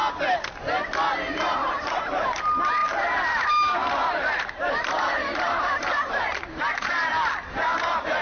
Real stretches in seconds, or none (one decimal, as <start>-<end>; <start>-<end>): 0.0-1.1